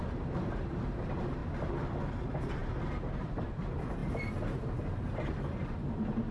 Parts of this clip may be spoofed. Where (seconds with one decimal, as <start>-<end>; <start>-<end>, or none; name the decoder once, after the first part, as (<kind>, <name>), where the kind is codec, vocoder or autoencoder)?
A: 0.0-1.4 (vocoder, BigVGAN v2); 2.2-2.6; 3.4-6.3